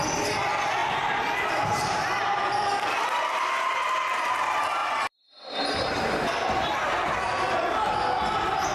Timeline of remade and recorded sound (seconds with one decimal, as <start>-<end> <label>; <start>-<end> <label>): 0.0-0.8 recorded; 0.8-3.2 remade; 3.2-4.8 recorded; 4.8-7.9 remade; 7.9-8.7 recorded